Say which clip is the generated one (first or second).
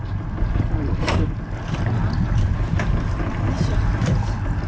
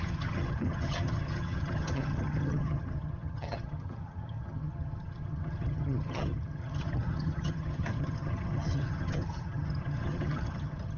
second